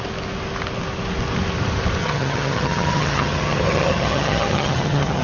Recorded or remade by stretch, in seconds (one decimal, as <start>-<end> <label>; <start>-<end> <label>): 0.0-2.0 recorded; 2.0-5.2 remade